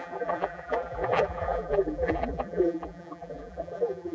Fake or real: fake